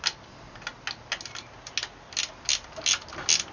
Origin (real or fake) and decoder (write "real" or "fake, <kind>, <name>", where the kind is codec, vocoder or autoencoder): real